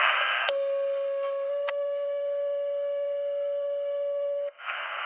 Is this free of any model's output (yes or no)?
no